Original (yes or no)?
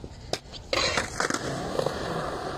yes